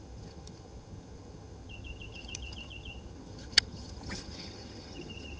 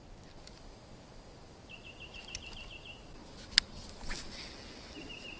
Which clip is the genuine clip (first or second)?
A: second